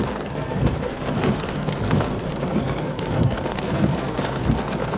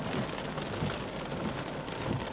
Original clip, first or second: second